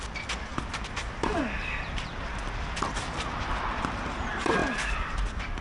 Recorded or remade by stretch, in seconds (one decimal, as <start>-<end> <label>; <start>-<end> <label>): 0.0-5.6 remade